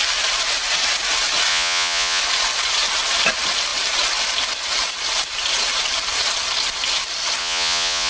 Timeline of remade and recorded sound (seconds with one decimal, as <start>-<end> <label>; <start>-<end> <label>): 0.0-1.5 recorded; 1.5-2.2 remade; 2.2-7.4 recorded; 7.4-8.1 remade